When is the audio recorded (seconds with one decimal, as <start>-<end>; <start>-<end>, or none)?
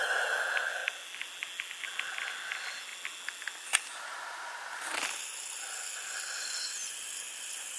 0.0-7.8